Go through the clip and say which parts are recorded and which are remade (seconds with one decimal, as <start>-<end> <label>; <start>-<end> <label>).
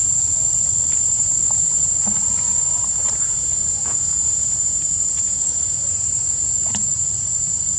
0.0-2.9 recorded; 2.9-6.9 remade; 6.9-7.8 recorded